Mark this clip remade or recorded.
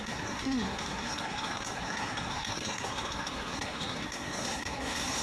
remade